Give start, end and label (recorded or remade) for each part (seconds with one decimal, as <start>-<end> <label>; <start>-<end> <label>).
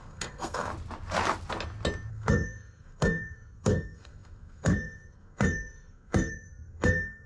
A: 0.0-0.7 remade; 0.7-2.1 recorded; 2.1-7.3 remade